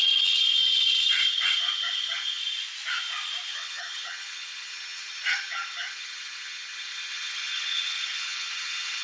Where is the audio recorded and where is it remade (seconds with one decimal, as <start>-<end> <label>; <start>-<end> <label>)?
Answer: 0.0-2.4 remade; 2.4-3.5 recorded; 3.5-9.0 remade